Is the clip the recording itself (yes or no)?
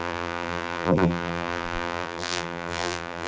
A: no